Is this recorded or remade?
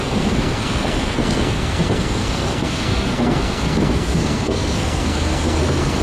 remade